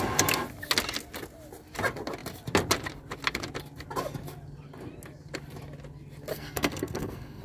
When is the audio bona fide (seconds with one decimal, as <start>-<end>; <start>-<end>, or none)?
0.0-6.3